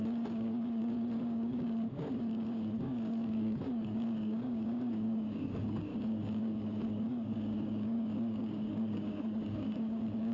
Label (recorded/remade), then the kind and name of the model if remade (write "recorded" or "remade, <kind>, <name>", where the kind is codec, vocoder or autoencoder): remade, codec, DAC